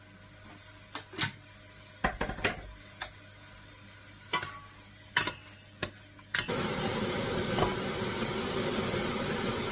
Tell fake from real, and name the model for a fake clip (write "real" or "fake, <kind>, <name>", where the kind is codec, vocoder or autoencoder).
real